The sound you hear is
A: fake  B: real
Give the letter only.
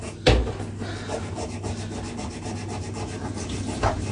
B